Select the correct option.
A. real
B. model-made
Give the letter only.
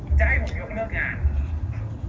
A